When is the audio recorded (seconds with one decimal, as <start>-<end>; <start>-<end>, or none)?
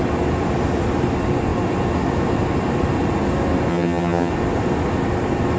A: 0.0-3.7; 4.3-5.6